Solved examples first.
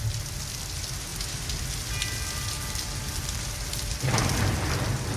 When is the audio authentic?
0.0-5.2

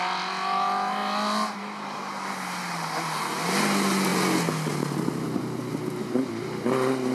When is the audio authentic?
0.0-7.1

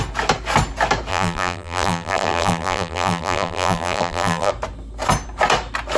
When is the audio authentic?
0.0-1.1; 4.5-6.0

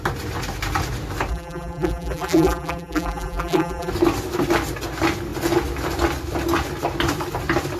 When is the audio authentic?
0.0-1.3; 3.9-7.8

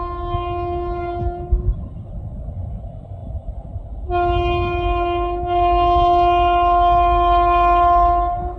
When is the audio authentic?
0.0-3.2; 3.8-8.6